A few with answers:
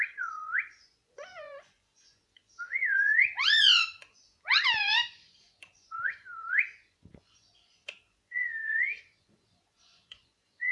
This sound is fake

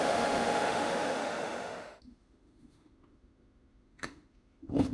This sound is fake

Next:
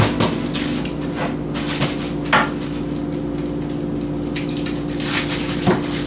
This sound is real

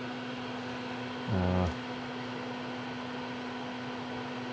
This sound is real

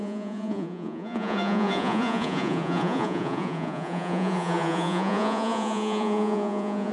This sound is fake